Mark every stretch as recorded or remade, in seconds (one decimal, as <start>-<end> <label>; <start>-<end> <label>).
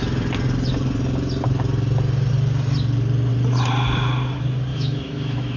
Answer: 0.0-4.7 recorded; 4.7-5.6 remade